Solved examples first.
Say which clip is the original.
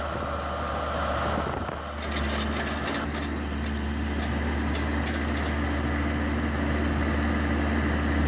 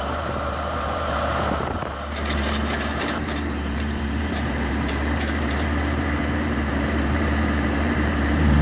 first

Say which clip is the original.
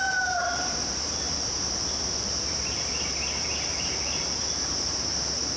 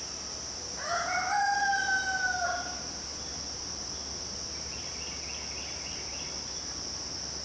second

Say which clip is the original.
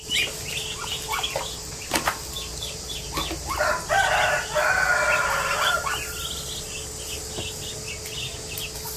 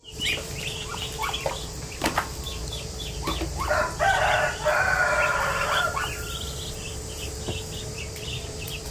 first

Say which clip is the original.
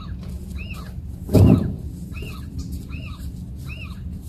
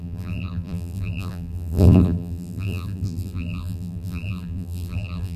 first